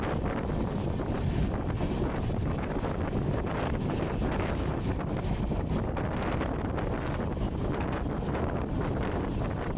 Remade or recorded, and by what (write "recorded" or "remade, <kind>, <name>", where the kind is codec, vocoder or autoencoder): recorded